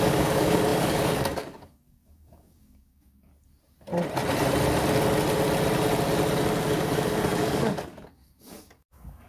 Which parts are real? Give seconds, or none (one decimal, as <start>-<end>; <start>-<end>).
3.3-6.6